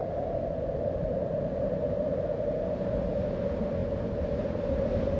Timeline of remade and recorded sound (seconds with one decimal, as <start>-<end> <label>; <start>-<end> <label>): 0.0-3.0 remade; 3.0-3.8 recorded; 3.8-5.2 remade